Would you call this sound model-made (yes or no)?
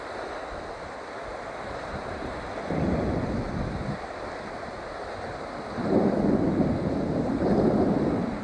no